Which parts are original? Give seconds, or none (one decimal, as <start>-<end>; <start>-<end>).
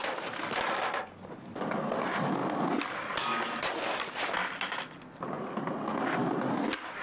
0.0-7.0